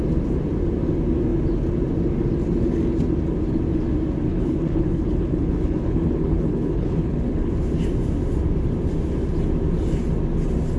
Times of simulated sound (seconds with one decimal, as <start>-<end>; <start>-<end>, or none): 4.3-7.5